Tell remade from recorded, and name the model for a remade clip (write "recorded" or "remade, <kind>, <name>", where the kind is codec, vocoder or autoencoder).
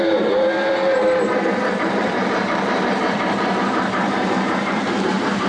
remade, vocoder, BigVGAN v2